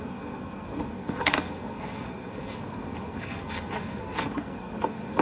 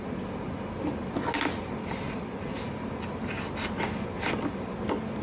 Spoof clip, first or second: first